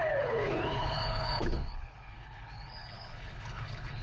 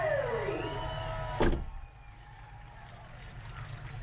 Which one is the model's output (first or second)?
first